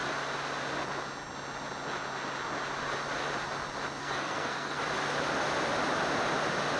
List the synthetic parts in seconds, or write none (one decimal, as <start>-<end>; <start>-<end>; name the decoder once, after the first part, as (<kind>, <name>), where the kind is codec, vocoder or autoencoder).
4.0-4.8 (codec, SNAC)